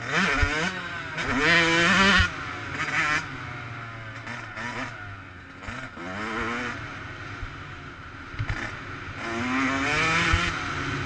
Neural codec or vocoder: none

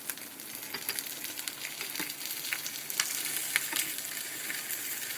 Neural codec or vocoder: none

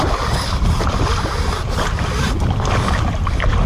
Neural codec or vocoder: none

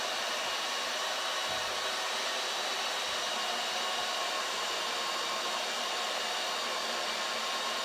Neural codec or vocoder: vocoder, BigVGAN v2